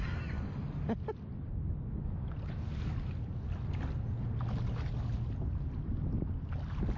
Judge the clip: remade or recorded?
recorded